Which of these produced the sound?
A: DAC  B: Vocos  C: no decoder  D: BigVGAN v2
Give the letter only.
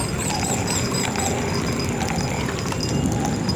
C